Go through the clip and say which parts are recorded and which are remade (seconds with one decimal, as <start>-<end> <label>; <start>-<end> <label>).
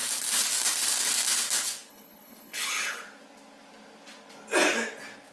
0.0-1.9 recorded; 1.9-3.0 remade; 3.0-5.3 recorded